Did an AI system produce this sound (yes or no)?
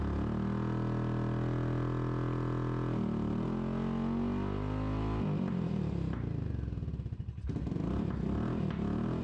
no